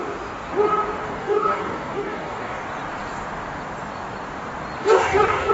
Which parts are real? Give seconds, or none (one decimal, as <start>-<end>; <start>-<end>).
0.0-1.1; 2.6-4.8